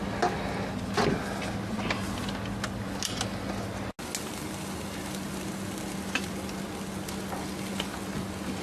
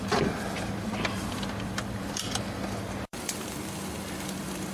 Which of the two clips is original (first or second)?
first